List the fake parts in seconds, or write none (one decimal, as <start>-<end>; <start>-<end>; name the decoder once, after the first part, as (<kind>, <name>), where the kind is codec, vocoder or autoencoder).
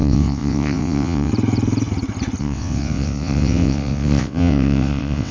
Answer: 0.0-1.3 (vocoder, WaveNeXt); 2.4-5.3